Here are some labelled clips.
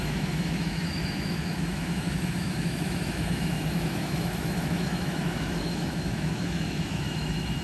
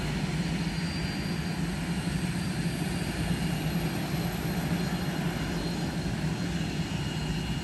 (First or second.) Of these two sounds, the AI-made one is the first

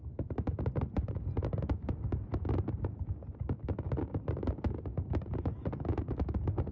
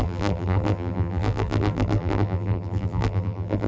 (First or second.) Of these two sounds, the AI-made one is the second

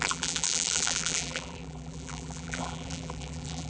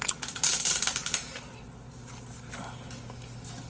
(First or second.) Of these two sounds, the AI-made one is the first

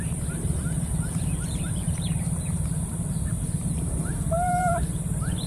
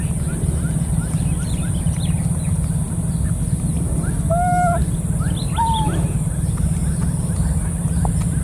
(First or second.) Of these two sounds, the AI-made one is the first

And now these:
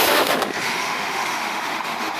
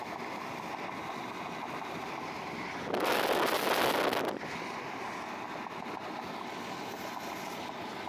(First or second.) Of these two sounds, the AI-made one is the first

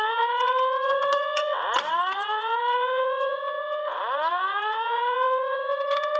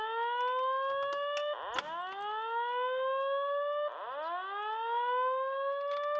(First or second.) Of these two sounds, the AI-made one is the first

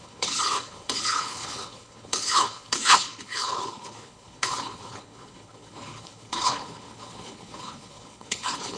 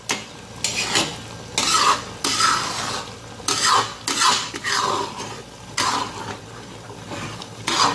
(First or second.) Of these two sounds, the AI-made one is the first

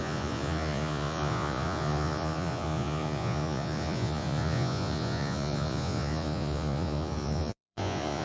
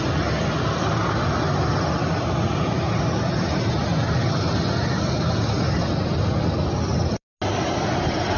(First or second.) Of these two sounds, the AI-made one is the first